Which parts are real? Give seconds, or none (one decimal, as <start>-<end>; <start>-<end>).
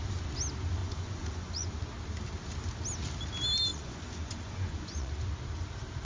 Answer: 0.0-0.8; 1.7-3.7; 5.1-6.0